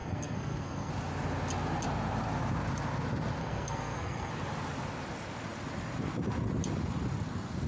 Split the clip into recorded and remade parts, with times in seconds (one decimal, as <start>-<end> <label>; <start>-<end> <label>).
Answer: 0.0-0.9 remade; 0.9-3.4 recorded; 3.4-4.3 remade; 4.3-7.7 recorded